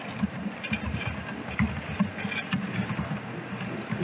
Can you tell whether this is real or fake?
real